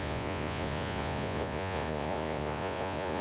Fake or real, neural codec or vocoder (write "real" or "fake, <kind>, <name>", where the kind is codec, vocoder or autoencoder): fake, vocoder, Vocos